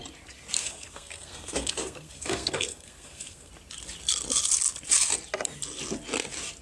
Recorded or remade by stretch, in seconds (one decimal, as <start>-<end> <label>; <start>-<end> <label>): 0.0-0.6 recorded; 0.6-3.5 remade; 3.5-6.6 recorded